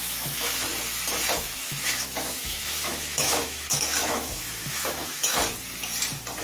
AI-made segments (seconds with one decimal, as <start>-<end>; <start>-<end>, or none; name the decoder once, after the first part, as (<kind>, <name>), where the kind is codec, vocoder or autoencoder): 0.0-0.7 (autoencoder, DAC-VAE); 1.4-5.4